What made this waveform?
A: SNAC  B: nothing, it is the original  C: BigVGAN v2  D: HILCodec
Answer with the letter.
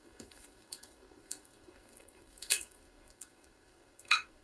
A